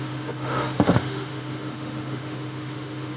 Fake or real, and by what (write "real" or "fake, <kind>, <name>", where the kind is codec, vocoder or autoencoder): fake, autoencoder, DAC-VAE